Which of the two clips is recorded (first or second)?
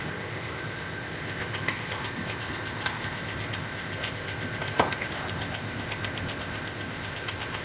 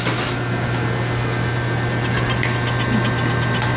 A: second